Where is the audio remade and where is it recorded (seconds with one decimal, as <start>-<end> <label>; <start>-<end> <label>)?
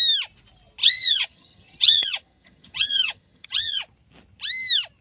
0.0-0.8 recorded; 0.8-3.8 remade; 3.8-5.0 recorded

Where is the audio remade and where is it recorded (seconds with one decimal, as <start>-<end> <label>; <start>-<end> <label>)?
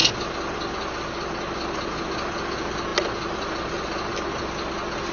0.0-5.1 recorded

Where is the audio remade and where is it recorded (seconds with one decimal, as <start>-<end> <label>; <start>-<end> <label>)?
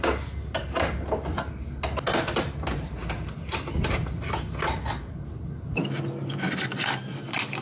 0.0-7.6 recorded